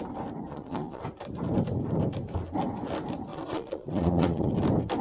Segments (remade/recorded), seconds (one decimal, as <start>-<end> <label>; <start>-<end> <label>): 0.0-0.5 recorded; 0.5-1.0 remade; 1.0-3.3 recorded; 3.3-4.5 remade; 4.5-5.0 recorded